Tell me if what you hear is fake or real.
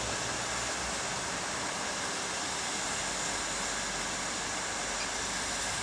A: real